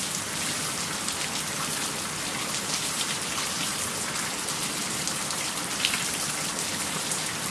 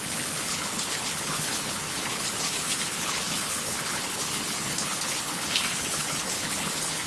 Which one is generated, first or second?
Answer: second